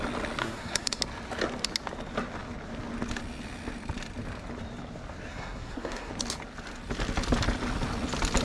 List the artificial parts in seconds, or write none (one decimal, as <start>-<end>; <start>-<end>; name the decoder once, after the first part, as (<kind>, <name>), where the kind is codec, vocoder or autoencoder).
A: 0.4-1.0 (codec, SNAC); 5.3-6.1